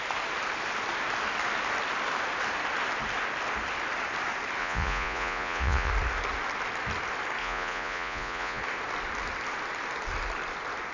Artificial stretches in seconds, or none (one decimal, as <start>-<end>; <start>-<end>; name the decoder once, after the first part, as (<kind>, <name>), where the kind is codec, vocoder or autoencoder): 4.6-5.9 (vocoder, Vocos); 7.4-8.6